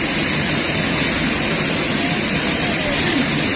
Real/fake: real